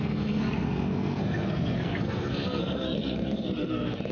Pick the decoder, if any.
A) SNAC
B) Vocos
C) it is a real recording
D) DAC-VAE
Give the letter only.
A